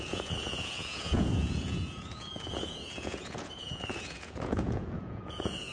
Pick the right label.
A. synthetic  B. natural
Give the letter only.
A